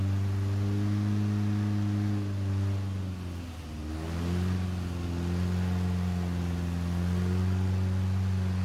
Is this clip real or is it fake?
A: real